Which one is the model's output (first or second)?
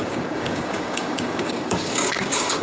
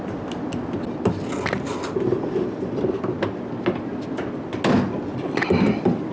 first